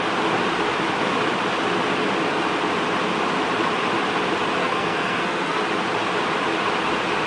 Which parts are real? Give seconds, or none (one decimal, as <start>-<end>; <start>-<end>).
0.0-4.6; 5.6-7.3